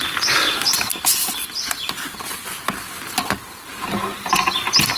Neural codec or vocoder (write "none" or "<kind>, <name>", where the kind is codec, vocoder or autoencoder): none